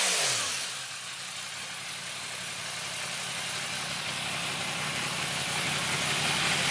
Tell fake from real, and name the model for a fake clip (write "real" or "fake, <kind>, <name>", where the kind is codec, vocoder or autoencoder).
real